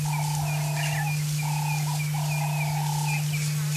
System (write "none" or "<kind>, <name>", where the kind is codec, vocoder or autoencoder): none